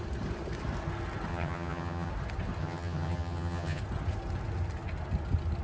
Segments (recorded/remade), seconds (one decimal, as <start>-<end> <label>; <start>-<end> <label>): 0.0-1.3 recorded; 1.3-2.1 remade; 2.1-2.6 recorded; 2.6-3.8 remade; 3.8-5.6 recorded